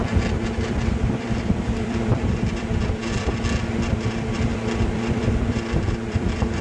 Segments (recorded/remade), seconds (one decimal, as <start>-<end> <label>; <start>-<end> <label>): 0.0-6.6 remade